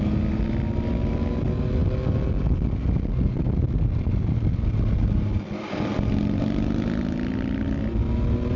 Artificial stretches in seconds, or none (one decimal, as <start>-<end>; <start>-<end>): none